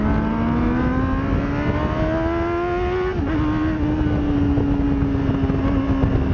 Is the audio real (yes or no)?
yes